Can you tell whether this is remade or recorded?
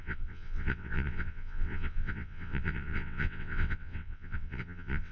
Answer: remade